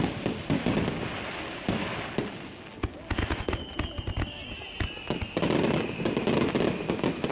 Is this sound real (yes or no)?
yes